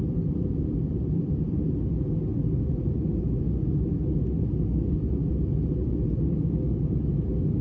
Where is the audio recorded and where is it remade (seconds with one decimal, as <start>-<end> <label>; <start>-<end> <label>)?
0.0-7.6 recorded